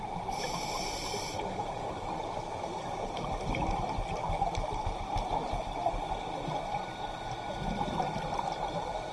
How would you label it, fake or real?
real